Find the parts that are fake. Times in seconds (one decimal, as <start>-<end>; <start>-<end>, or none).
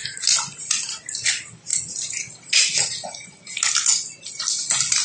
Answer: none